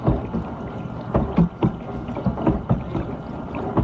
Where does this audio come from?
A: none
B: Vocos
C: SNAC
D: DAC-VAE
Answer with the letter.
A